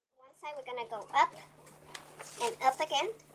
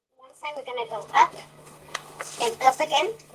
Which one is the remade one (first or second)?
second